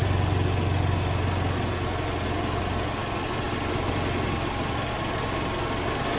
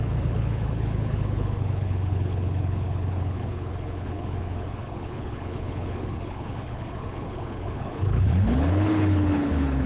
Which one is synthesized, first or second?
second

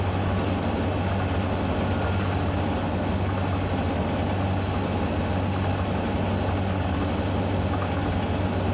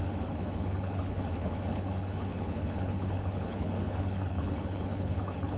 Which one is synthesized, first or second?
second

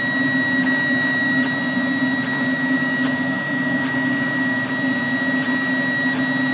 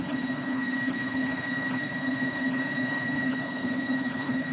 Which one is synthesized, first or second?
second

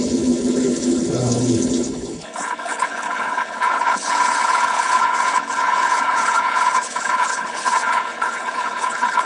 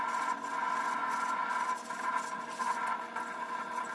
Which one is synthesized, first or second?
first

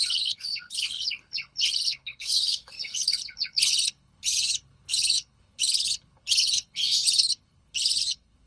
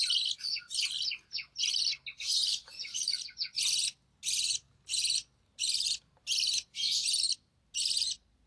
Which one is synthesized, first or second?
first